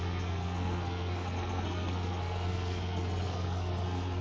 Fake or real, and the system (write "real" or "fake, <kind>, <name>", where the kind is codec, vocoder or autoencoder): fake, codec, SNAC